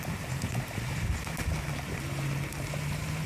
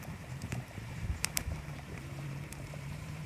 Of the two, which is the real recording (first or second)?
first